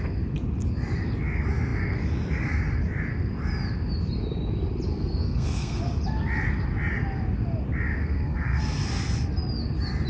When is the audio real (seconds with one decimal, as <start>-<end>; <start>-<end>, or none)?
0.0-4.9; 5.8-8.0; 8.6-10.1